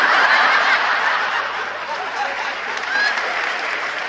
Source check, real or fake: fake